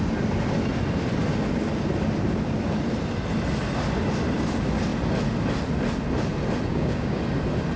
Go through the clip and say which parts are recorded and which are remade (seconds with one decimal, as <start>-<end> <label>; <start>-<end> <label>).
0.0-6.7 recorded; 6.7-7.2 remade; 7.2-7.8 recorded